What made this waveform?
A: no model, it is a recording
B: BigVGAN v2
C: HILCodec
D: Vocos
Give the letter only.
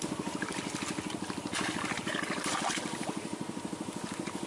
A